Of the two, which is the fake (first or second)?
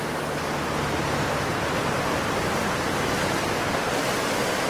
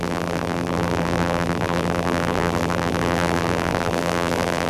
second